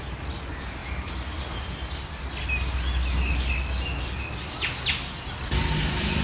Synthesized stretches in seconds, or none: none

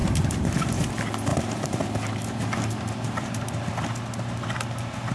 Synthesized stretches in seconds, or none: 0.0-0.9 (vocoder, BigVGAN v2); 1.3-3.4

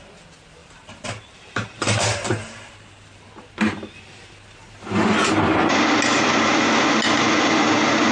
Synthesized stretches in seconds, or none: 0.6-3.3 (vocoder, BigVGAN v2)

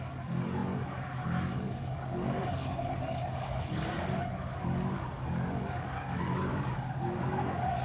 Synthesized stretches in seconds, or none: 0.0-7.8 (codec, DAC)